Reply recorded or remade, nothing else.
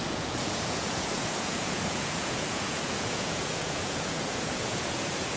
remade